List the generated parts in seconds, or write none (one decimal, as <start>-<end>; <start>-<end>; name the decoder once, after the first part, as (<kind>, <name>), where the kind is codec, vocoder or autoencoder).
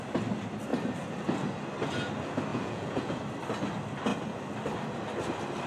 2.5-3.2 (vocoder, Vocos)